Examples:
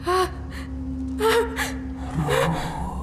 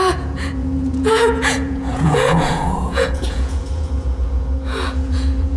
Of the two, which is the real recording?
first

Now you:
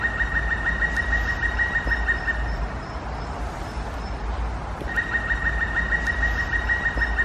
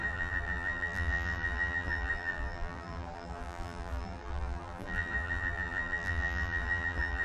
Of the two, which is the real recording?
first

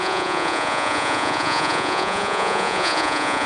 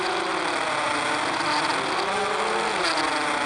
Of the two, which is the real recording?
second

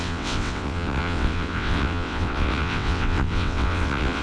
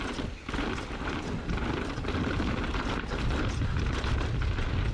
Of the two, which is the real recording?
second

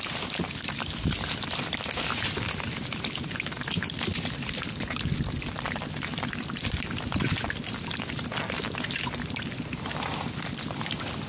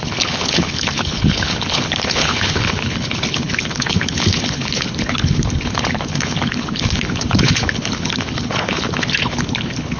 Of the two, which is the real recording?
first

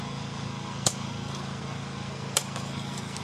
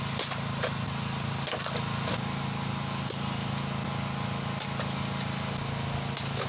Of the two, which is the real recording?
second